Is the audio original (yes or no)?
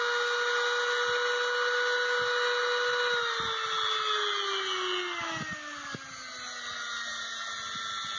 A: yes